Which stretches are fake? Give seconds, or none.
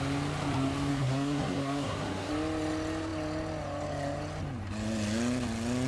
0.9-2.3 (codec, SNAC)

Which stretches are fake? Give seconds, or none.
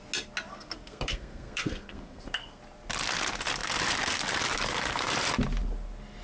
0.5-2.6 (codec, SNAC)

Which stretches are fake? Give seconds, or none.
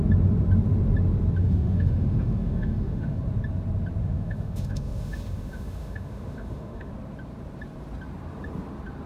1.4-3.2 (autoencoder, DAC-VAE); 4.0-6.9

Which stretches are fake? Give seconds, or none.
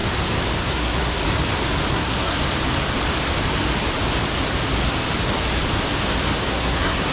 0.6-1.2 (codec, SNAC); 1.9-2.4; 6.5-7.1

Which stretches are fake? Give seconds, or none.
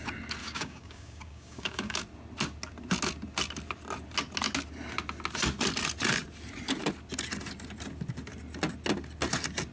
0.4-2.0 (codec, DAC)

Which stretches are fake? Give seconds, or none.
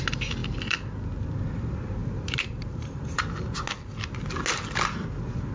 2.0-3.2 (vocoder, BigVGAN v2)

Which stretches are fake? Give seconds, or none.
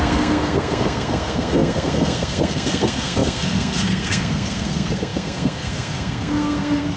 0.0-7.0 (codec, SNAC)